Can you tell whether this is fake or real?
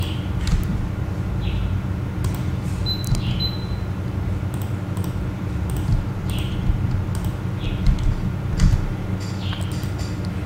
real